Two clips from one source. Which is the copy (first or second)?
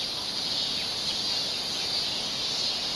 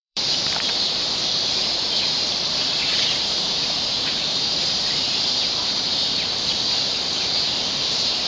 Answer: second